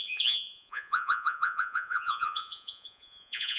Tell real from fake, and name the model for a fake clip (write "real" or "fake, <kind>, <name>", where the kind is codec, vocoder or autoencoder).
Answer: fake, vocoder, Vocos